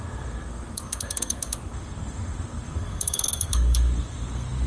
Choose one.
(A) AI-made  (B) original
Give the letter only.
A